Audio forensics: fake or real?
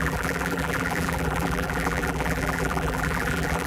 fake